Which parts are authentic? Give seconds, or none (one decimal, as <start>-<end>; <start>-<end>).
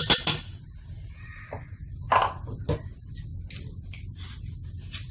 0.0-5.1